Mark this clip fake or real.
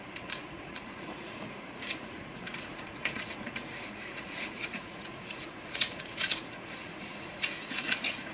fake